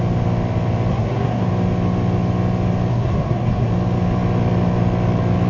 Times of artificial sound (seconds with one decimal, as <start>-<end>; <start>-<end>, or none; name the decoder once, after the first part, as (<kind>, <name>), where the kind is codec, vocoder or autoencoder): 0.9-1.4 (codec, SNAC); 2.9-3.7